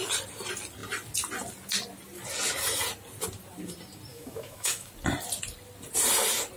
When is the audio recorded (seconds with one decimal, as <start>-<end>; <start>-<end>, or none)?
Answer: 0.0-4.1; 4.9-6.6